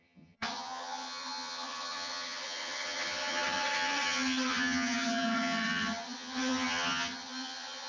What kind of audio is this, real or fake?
fake